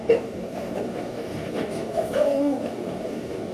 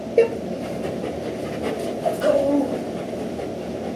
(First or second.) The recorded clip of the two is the second